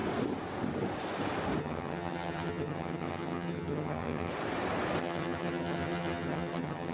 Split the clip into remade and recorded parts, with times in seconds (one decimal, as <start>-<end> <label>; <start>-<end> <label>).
0.0-1.6 recorded; 1.6-4.3 remade; 4.3-5.0 recorded; 5.0-6.9 remade